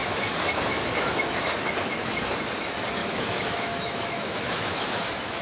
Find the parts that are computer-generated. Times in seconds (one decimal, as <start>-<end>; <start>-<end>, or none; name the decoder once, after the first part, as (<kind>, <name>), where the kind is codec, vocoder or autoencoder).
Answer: 0.0-2.4 (autoencoder, DAC-VAE); 3.0-5.4